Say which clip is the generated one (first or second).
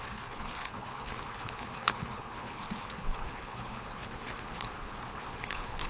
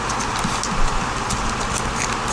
first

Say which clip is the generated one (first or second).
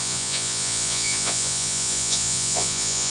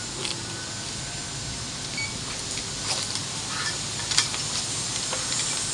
first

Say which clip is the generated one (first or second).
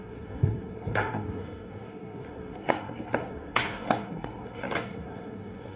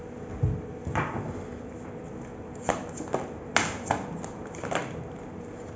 first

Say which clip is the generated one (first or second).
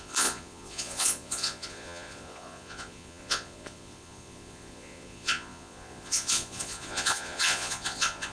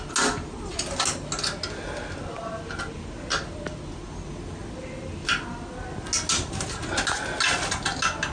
first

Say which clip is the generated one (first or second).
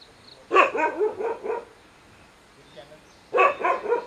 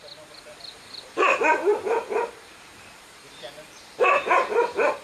second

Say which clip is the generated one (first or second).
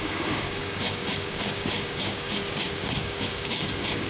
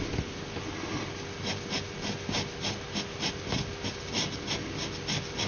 first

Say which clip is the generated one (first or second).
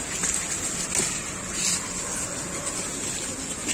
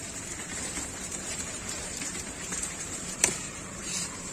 second